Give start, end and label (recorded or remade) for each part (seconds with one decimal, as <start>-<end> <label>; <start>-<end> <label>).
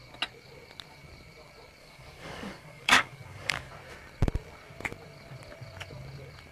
0.0-1.8 recorded; 1.8-3.7 remade; 3.7-6.5 recorded